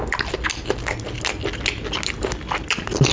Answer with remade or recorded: recorded